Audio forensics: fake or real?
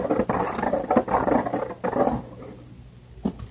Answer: real